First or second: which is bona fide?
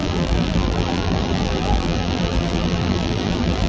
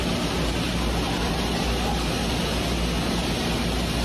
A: second